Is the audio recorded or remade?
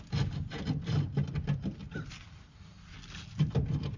recorded